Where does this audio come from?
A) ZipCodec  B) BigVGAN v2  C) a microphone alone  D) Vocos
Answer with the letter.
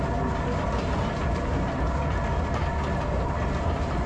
C